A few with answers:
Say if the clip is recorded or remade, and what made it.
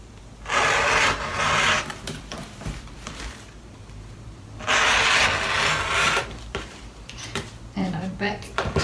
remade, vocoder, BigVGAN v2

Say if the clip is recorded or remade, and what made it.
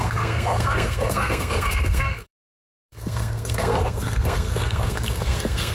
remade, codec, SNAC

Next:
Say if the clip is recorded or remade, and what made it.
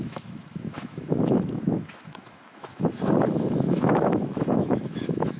remade, autoencoder, DAC-VAE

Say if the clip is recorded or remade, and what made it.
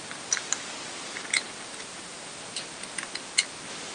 recorded